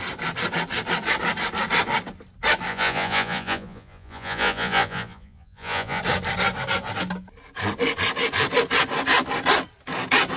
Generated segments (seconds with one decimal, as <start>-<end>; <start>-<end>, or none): 2.7-6.0